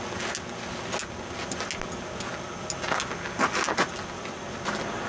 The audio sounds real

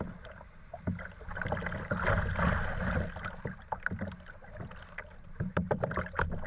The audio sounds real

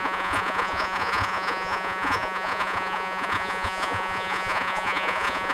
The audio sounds fake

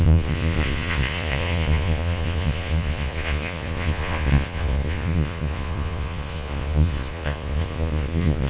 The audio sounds fake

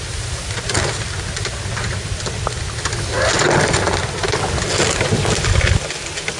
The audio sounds real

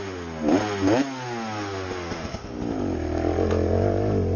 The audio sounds real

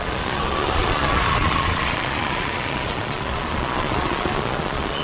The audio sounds fake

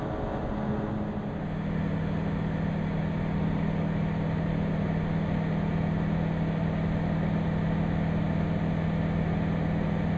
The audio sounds real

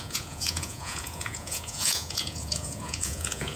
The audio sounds fake